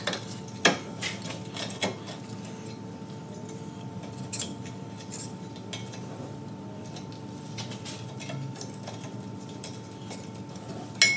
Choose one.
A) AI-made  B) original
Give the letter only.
B